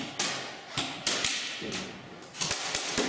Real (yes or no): yes